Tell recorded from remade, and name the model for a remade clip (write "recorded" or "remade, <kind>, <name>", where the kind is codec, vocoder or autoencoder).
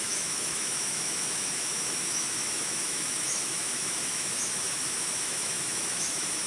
remade, autoencoder, DAC-VAE